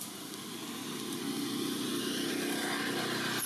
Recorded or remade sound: recorded